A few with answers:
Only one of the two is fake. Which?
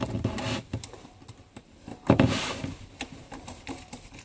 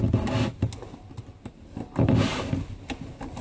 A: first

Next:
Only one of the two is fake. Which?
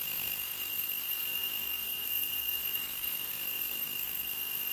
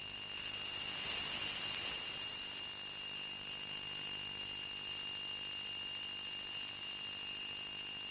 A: first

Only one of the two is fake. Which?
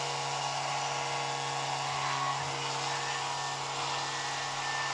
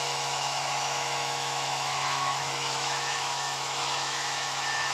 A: second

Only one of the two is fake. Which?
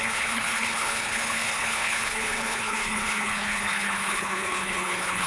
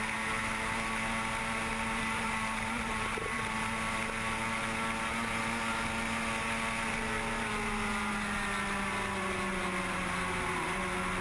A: first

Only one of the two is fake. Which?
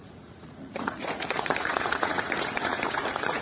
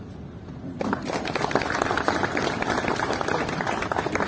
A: first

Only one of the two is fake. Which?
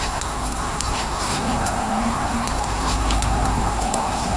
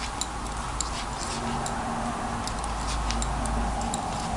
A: first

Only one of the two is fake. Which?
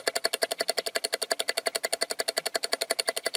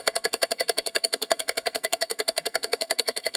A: second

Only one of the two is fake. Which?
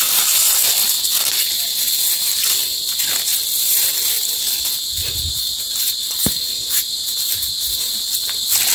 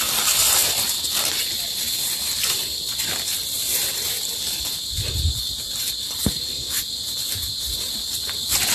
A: second